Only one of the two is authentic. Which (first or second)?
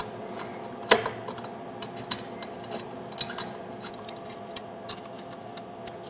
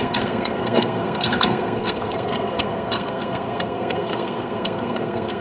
first